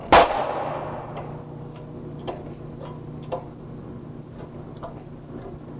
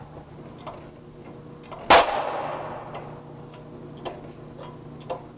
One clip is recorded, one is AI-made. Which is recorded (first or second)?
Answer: second